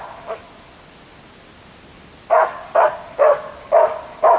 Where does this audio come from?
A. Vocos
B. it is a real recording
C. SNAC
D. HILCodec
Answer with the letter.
B